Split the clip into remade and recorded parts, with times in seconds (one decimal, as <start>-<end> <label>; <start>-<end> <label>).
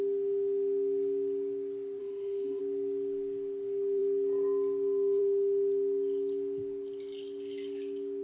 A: 0.0-2.0 recorded; 2.0-2.6 remade; 2.6-8.2 recorded